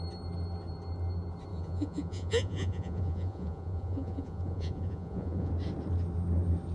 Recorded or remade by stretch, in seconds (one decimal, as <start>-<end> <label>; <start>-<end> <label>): 0.0-1.5 recorded; 1.5-5.5 remade; 5.5-6.7 recorded